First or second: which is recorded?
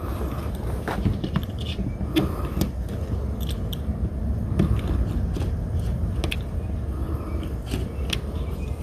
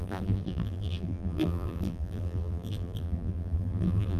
first